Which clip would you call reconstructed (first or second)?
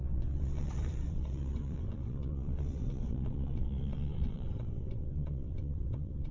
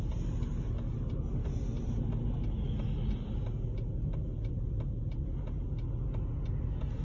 first